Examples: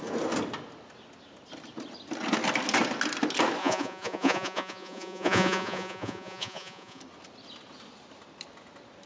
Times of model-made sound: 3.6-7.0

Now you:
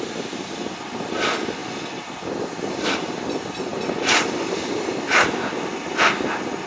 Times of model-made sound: none

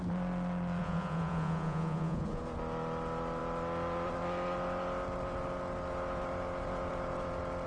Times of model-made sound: 0.8-2.4

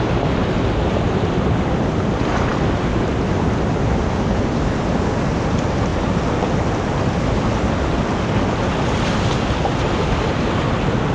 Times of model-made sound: none

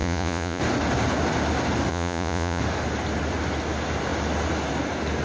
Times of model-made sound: 0.0-0.6; 1.9-2.6

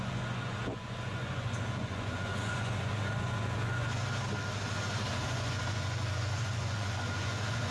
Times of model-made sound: 0.0-4.0; 5.1-7.7

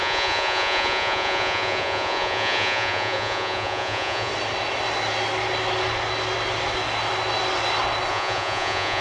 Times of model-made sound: 0.0-4.3; 8.1-9.0